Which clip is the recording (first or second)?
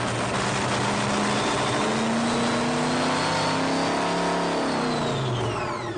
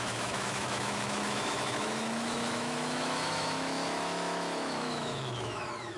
first